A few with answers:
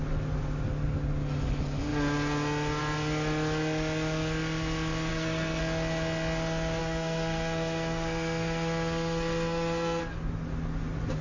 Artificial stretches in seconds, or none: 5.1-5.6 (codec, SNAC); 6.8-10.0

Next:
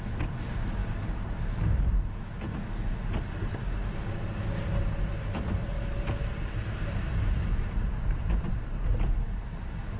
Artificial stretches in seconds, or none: 7.5-8.5 (vocoder, BigVGAN v2)

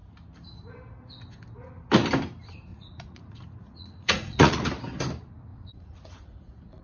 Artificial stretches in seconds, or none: 2.7-4.6 (vocoder, Vocos); 5.5-6.8

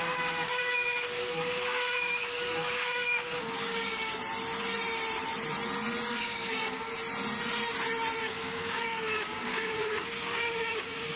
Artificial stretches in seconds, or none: 0.0-4.2 (codec, DAC); 6.1-6.9; 8.2-11.2

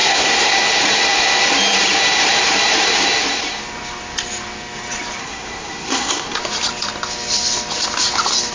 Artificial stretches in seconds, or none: 0.0-0.5 (codec, SNAC); 5.2-6.4